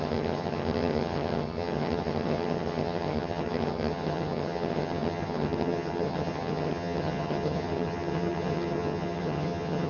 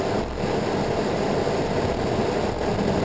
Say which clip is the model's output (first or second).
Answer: first